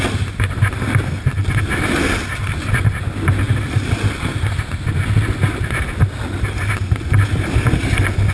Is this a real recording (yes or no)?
yes